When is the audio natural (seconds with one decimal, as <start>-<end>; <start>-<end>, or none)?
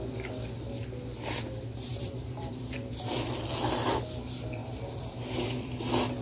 0.0-1.9; 3.3-4.6; 5.8-6.2